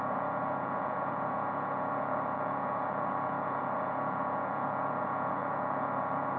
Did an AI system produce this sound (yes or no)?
yes